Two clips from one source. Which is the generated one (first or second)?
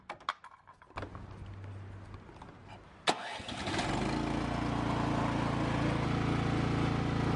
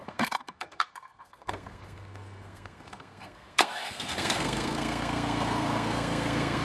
second